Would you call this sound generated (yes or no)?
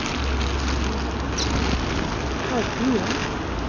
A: no